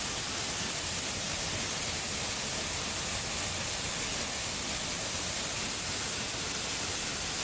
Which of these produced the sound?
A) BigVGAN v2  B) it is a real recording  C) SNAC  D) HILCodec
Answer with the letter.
B